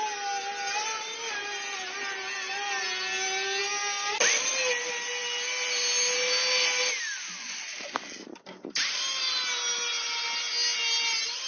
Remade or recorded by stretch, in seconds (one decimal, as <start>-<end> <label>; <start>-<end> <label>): 0.0-11.5 recorded